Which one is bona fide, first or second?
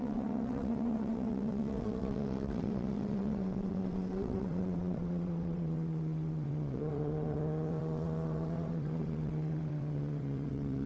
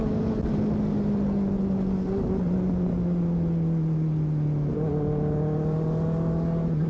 second